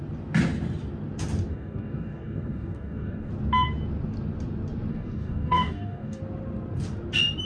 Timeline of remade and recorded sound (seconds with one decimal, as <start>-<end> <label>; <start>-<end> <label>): 0.0-1.5 recorded; 1.5-3.3 remade; 3.3-4.9 recorded; 4.9-6.2 remade; 6.2-7.4 recorded